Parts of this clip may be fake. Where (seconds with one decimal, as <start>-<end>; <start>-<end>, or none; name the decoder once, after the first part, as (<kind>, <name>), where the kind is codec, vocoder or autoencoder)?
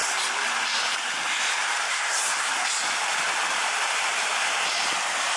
1.9-2.5 (codec, SNAC)